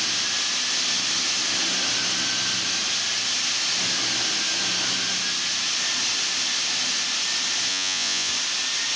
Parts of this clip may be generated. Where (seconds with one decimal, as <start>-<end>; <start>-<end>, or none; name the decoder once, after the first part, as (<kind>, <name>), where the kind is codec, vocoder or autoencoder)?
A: 7.7-8.3 (vocoder, Vocos)

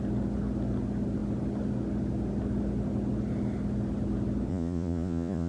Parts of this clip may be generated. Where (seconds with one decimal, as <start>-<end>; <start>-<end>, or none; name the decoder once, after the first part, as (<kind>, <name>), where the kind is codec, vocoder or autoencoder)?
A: 4.5-5.5 (vocoder, Vocos)

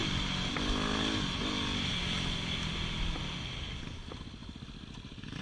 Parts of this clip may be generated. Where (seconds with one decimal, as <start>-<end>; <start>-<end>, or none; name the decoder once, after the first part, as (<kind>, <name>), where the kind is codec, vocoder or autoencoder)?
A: none

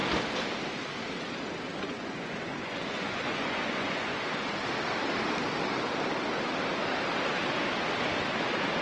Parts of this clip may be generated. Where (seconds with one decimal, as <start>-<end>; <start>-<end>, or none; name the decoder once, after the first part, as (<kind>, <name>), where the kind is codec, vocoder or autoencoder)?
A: 1.8-4.6 (vocoder, Vocos)